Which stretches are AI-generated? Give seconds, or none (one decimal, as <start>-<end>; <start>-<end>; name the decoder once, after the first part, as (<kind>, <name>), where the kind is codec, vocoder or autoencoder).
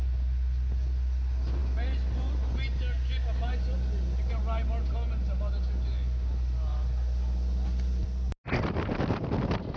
none